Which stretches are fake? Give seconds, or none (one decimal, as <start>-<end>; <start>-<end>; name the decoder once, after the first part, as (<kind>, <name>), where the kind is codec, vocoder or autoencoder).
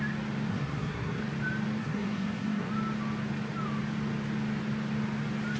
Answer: 0.5-1.2 (codec, SNAC); 1.8-2.7